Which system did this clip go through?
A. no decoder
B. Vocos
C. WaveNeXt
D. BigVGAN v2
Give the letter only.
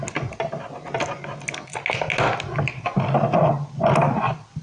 A